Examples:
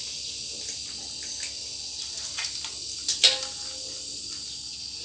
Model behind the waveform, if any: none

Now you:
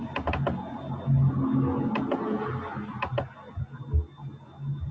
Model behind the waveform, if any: none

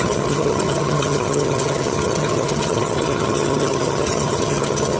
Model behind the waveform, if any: vocoder, HiFi-GAN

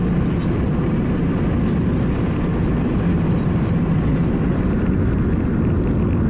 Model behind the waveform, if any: none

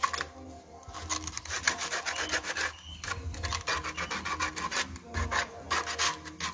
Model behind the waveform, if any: none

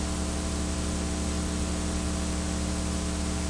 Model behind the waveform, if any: none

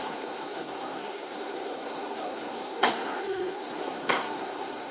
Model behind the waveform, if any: codec, SNAC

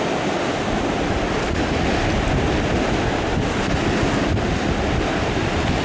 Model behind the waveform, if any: none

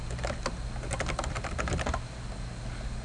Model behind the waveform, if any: none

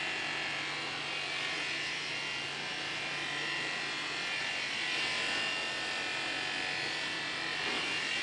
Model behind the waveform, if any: none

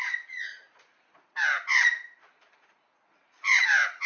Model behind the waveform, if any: vocoder, Vocos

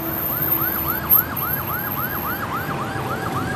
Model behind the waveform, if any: none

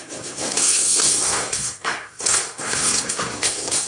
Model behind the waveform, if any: codec, SNAC